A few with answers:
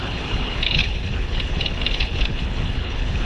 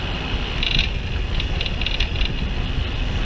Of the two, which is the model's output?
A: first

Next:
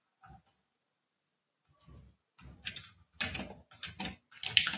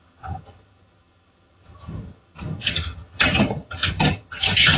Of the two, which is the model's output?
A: second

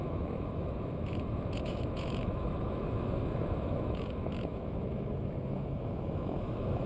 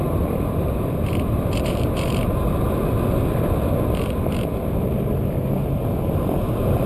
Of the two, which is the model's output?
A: first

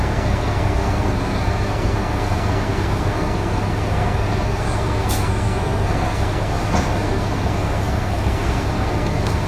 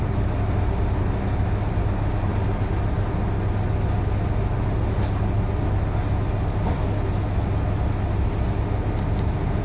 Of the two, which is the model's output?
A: first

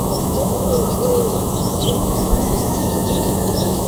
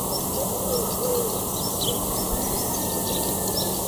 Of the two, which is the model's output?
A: first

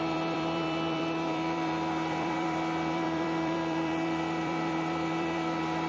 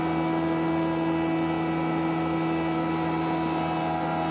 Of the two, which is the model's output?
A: first